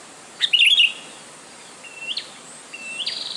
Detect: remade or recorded recorded